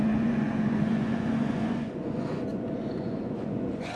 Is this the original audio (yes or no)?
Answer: no